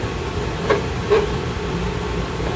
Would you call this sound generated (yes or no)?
no